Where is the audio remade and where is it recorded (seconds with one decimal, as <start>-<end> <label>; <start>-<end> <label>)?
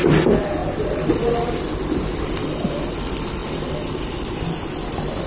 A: 0.0-5.3 recorded